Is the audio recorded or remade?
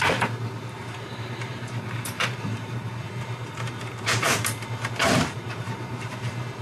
remade